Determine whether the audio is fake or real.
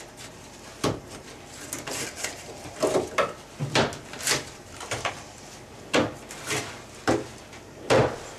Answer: real